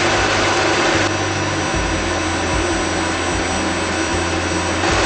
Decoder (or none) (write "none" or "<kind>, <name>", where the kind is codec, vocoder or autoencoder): none